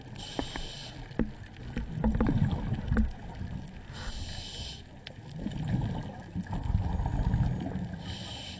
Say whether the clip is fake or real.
real